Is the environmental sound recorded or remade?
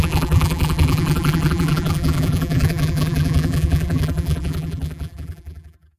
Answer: remade